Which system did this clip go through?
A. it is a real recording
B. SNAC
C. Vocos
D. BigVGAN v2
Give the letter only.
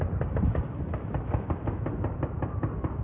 A